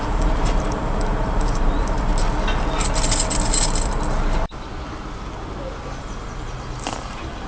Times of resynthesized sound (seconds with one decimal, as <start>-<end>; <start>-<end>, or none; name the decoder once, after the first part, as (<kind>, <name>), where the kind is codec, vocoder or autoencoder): 0.0-2.1 (vocoder, BigVGAN v2); 6.0-7.5